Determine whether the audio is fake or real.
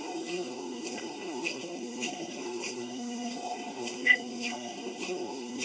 fake